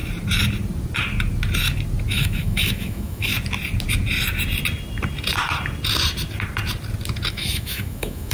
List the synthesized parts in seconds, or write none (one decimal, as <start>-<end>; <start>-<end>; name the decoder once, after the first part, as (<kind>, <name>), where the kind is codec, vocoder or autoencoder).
2.1-3.3 (autoencoder, DAC-VAE); 7.3-8.3

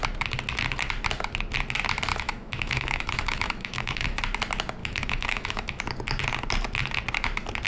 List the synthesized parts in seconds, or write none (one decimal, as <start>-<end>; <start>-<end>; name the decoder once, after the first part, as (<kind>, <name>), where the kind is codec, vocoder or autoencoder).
2.1-4.2 (autoencoder, DAC-VAE); 4.8-5.8